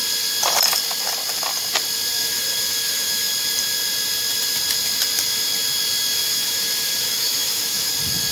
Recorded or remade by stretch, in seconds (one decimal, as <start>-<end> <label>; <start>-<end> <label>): 0.0-2.2 recorded; 2.2-3.3 remade; 3.3-6.2 recorded; 6.2-7.9 remade; 7.9-8.3 recorded